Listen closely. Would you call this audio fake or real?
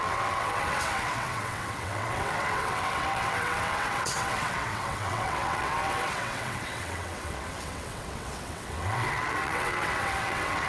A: fake